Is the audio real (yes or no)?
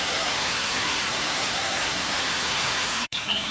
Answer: no